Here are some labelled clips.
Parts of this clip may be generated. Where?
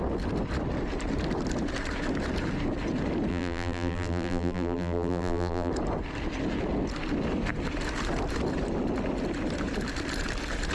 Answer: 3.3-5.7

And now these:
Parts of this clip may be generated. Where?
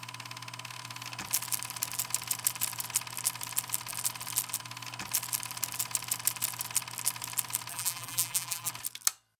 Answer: 7.7-8.7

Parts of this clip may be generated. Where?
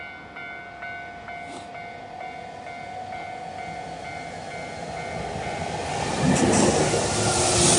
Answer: none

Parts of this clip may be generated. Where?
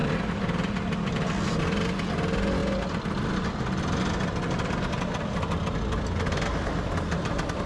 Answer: none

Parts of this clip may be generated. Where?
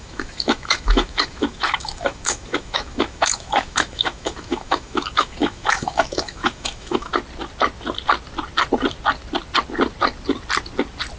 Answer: 0.0-7.1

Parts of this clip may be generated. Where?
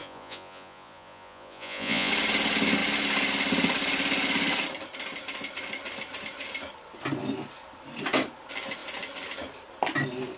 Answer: 0.0-2.1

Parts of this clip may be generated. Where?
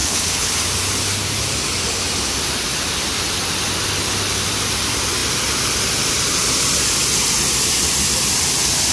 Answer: 0.0-0.5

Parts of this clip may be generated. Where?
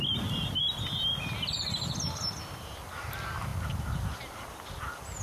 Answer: none